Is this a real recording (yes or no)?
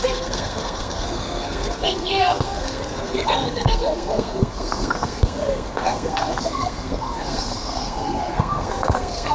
no